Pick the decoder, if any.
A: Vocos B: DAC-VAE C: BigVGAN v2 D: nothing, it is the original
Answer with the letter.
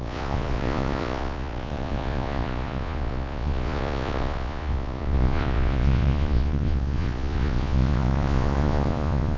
A